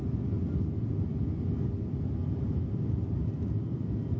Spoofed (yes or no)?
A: no